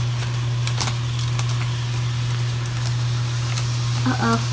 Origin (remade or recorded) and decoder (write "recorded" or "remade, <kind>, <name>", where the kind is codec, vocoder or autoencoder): recorded